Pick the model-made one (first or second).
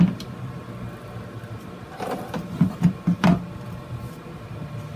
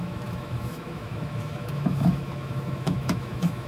second